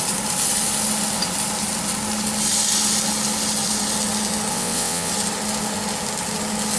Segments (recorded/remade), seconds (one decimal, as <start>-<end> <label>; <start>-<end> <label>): 0.0-4.5 recorded; 4.5-5.1 remade; 5.1-6.8 recorded